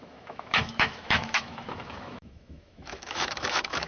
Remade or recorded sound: remade